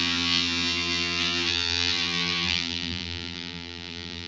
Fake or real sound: fake